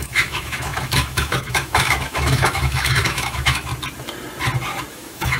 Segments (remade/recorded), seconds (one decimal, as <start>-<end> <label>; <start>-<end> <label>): 0.0-3.7 remade; 3.7-4.9 recorded; 4.9-5.4 remade